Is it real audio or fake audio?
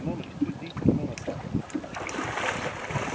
real